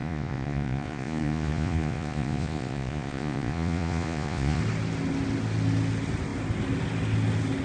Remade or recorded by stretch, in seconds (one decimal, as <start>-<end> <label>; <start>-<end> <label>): 0.0-4.6 remade; 4.6-7.6 recorded